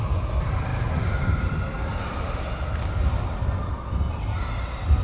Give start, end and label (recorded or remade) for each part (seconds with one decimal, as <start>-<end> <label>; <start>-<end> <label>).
0.0-5.0 recorded